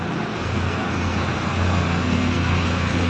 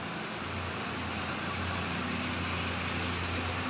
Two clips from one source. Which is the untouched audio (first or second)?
second